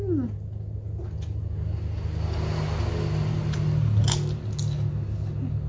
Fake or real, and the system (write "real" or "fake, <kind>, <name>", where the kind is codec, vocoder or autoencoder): real